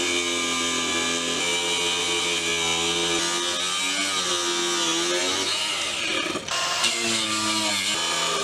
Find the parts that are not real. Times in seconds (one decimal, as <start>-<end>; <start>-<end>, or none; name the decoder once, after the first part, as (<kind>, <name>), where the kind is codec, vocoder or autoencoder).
6.8-7.7 (codec, DAC)